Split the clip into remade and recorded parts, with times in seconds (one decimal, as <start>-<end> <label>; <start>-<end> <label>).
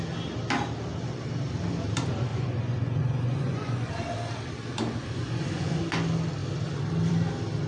0.0-2.3 recorded; 2.3-3.9 remade; 3.9-5.0 recorded; 5.0-5.8 remade; 5.8-7.7 recorded